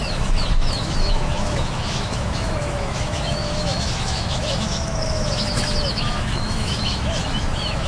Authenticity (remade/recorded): remade